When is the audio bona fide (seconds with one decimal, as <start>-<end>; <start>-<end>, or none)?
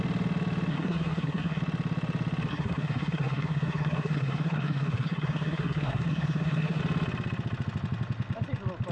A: 0.0-0.7; 1.6-2.5; 6.8-8.9